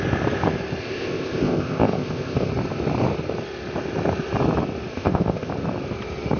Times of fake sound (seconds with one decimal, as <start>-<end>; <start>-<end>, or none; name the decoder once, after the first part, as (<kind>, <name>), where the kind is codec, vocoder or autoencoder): 0.8-2.5 (codec, ZipCodec); 4.9-5.5